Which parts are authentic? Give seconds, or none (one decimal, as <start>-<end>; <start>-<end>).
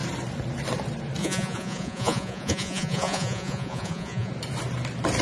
0.0-1.2; 4.3-5.2